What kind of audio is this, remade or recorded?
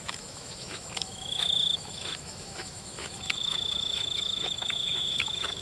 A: remade